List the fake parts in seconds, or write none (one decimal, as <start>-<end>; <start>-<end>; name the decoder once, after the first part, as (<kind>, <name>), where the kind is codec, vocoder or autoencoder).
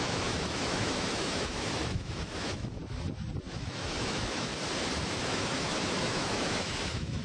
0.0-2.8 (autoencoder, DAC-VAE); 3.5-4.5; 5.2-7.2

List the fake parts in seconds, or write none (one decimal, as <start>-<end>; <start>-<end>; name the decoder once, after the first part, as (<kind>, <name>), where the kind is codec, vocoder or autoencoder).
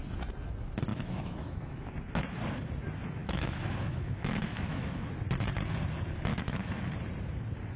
0.9-1.9 (autoencoder, DAC-VAE); 3.2-5.1; 6.3-6.8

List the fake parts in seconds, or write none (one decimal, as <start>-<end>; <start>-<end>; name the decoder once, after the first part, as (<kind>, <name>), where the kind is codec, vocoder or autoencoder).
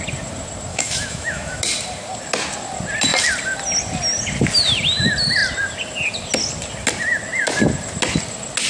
0.7-1.6 (autoencoder, DAC-VAE)